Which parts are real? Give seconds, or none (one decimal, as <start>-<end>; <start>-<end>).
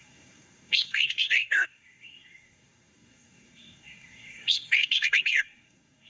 none